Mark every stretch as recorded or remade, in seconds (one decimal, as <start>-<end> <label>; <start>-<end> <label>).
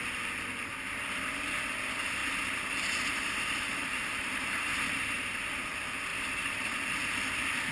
0.0-2.2 recorded; 2.2-5.6 remade; 5.6-6.1 recorded; 6.1-6.7 remade; 6.7-7.7 recorded